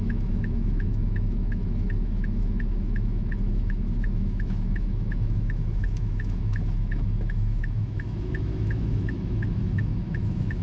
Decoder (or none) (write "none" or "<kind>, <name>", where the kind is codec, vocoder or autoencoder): autoencoder, DAC-VAE